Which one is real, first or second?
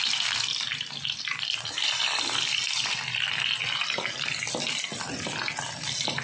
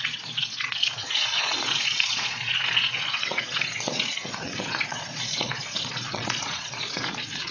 first